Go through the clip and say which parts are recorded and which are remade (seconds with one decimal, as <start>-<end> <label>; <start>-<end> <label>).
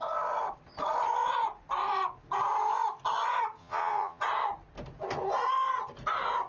0.0-3.6 recorded; 3.6-4.2 remade; 4.2-6.5 recorded